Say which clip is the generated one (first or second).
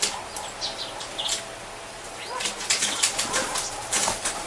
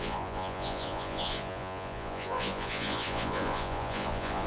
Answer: second